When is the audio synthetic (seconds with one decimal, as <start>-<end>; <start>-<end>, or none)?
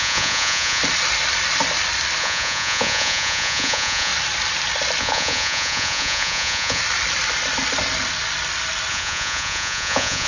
0.0-0.8; 2.2-4.1; 5.0-6.8; 8.9-10.3